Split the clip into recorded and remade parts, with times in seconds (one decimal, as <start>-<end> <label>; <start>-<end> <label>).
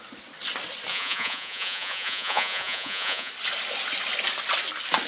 0.0-0.9 recorded; 0.9-3.3 remade; 3.3-5.1 recorded